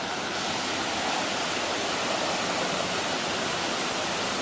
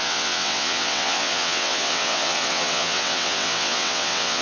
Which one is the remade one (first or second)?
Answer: second